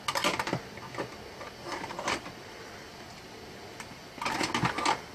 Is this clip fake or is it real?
real